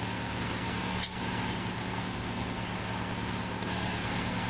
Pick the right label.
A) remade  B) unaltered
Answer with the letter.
A